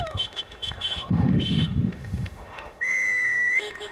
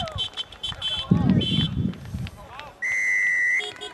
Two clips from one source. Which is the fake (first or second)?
first